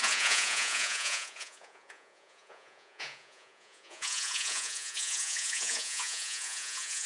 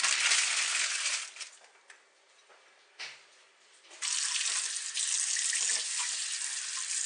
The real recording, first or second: second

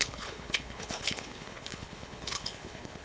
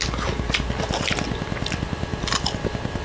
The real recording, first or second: second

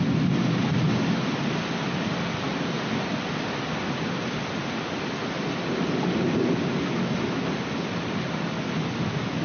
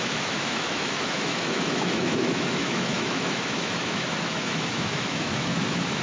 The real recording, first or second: first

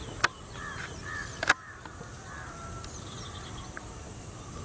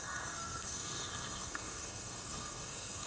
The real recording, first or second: first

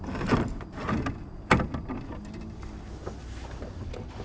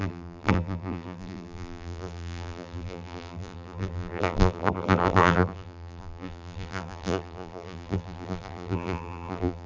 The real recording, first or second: first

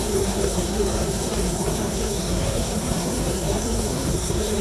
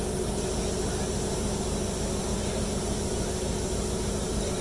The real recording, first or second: second